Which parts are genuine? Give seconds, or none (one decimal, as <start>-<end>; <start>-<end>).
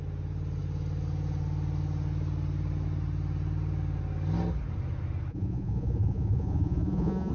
0.0-5.3